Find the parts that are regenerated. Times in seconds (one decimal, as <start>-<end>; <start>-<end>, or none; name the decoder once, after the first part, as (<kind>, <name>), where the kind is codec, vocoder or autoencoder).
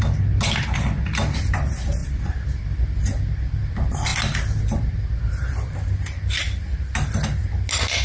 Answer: none